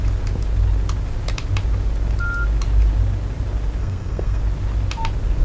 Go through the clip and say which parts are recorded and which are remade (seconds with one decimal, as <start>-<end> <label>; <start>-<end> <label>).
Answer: 0.0-3.8 recorded; 3.8-4.4 remade; 4.4-5.4 recorded